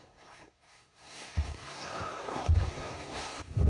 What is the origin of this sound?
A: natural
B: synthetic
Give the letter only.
B